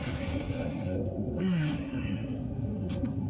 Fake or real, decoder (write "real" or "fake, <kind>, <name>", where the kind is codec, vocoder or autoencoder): fake, codec, SNAC